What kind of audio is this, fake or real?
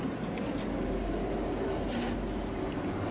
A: real